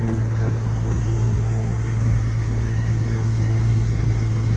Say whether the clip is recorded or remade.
remade